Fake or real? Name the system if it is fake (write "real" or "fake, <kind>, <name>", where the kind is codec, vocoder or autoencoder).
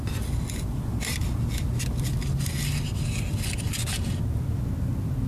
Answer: real